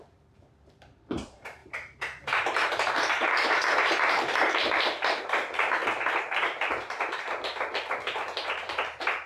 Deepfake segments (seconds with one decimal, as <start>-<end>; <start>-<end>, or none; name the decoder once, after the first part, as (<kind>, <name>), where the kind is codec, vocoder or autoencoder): 0.0-5.8 (vocoder, BigVGAN v2); 6.3-9.3